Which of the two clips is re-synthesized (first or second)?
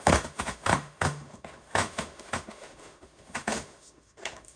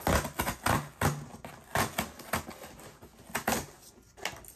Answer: first